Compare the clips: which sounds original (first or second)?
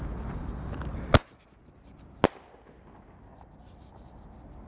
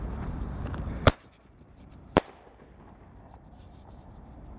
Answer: first